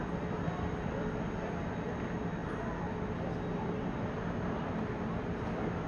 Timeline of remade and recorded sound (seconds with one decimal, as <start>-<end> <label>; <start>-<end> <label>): 0.0-5.9 recorded